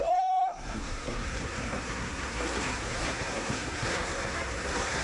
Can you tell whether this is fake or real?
fake